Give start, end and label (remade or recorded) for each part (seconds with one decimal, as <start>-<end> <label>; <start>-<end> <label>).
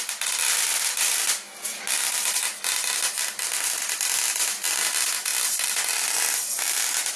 0.0-5.3 recorded; 5.3-6.8 remade; 6.8-7.2 recorded